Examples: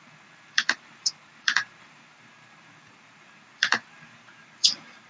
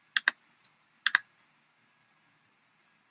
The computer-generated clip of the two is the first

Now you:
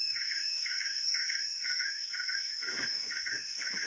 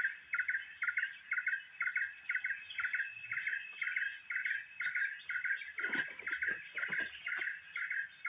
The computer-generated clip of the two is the first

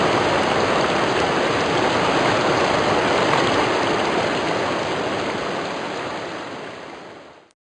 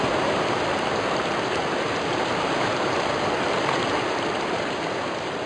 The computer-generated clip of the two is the second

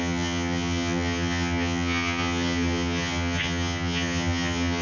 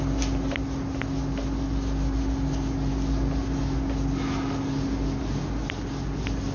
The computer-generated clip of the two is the first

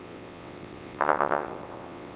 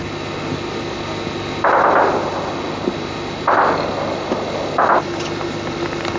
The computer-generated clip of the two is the first